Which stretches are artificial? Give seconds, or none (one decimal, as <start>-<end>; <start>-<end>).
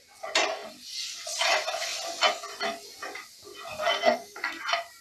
3.8-4.6